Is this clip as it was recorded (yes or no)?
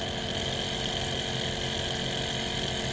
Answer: yes